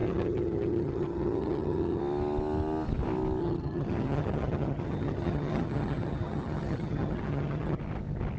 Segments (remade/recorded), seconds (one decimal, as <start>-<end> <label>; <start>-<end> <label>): 0.0-2.0 remade; 2.0-3.4 recorded; 3.4-7.8 remade; 7.8-8.4 recorded